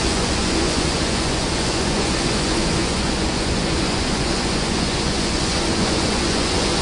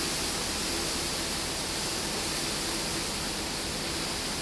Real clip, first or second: second